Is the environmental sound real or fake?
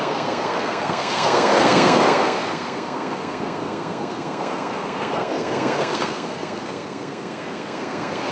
fake